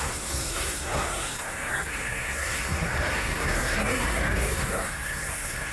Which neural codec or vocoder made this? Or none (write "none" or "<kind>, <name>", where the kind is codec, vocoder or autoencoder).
codec, SNAC